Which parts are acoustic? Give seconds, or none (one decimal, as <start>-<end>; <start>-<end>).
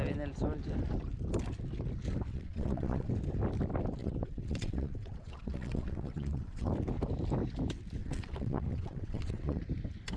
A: 0.0-2.3; 3.1-4.0; 6.7-8.0; 9.6-10.2